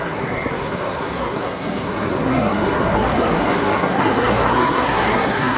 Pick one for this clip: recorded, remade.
remade